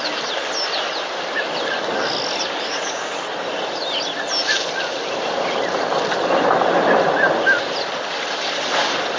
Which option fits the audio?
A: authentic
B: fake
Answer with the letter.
A